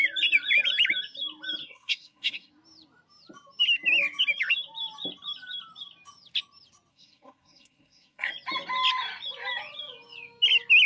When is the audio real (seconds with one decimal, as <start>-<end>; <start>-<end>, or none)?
0.0-1.6; 2.5-6.9; 8.3-10.9